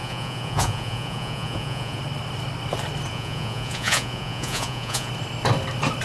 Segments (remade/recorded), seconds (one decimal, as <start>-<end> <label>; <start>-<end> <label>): 0.0-2.0 remade; 2.0-3.1 recorded; 3.1-5.1 remade; 5.1-6.0 recorded